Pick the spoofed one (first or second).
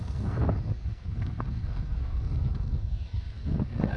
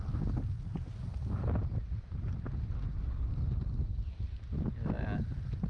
first